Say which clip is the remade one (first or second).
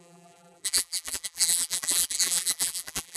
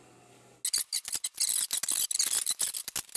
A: first